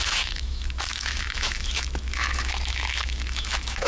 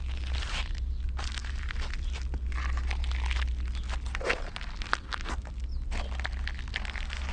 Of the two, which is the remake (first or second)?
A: first